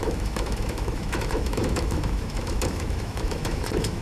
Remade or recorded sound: remade